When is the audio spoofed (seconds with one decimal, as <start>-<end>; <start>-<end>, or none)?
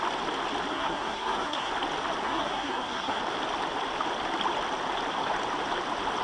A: 0.7-1.7; 2.2-3.2